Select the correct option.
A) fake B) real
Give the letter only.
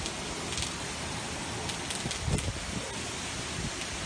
B